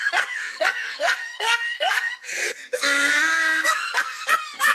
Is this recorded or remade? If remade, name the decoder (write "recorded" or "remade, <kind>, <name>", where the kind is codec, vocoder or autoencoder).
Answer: remade, codec, SNAC